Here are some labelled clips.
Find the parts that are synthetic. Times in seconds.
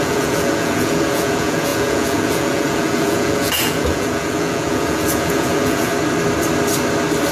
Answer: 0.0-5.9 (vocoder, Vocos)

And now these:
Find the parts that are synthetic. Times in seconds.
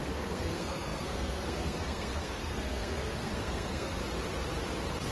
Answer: 0.0-4.0 (codec, SNAC)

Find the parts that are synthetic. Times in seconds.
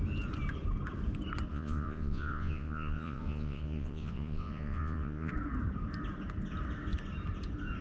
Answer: 1.5-5.3 (vocoder, Vocos)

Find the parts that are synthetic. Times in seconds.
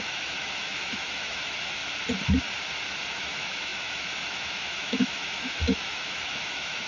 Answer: 0.0-1.8 (autoencoder, DAC-VAE); 3.1-6.9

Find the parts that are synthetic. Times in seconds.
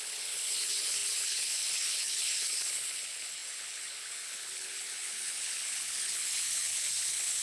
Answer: 0.0-7.4 (codec, HILCodec)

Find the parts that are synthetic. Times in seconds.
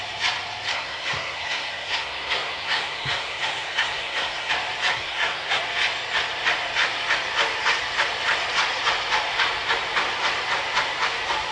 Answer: 0.7-4.5 (codec, SNAC); 4.9-5.6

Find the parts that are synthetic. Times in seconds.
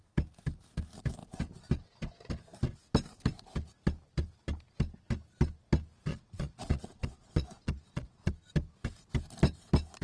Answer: 6.1-8.3 (vocoder, Vocos)